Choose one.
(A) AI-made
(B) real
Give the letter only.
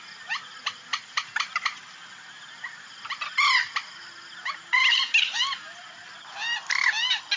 B